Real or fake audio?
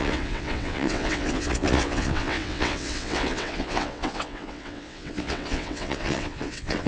fake